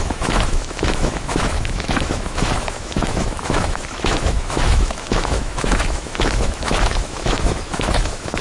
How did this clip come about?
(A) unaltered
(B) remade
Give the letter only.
B